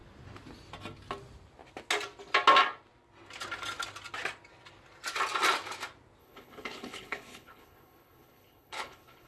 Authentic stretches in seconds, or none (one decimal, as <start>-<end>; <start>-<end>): 0.0-6.2